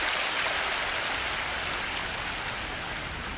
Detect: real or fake real